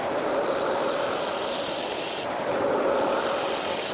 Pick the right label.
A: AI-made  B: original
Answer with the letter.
B